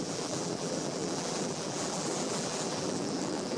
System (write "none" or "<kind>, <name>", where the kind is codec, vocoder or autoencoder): vocoder, BigVGAN v2